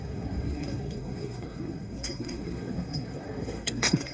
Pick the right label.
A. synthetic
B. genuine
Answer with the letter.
A